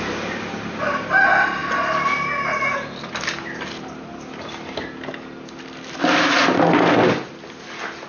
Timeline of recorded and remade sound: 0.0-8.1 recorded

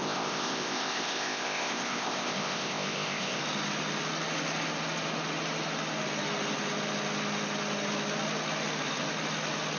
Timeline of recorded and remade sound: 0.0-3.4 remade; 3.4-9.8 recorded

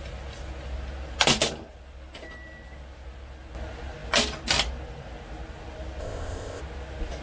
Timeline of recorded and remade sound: 0.0-6.0 recorded; 6.0-6.6 remade; 6.6-7.2 recorded

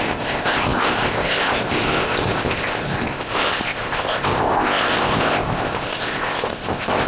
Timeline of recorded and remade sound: 0.0-7.1 remade

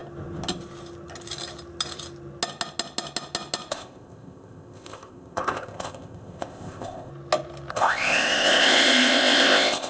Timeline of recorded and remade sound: 0.0-3.7 recorded; 3.7-7.1 remade; 7.1-7.7 recorded; 7.7-9.9 remade

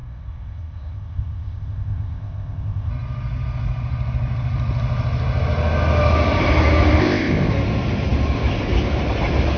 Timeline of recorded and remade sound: 0.0-2.9 remade; 2.9-7.0 recorded; 7.0-7.5 remade; 7.5-9.6 recorded

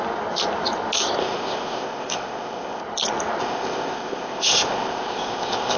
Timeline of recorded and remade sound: 0.0-1.2 recorded; 1.2-2.8 remade; 2.8-3.4 recorded; 3.4-5.8 remade